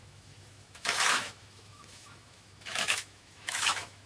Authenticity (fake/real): fake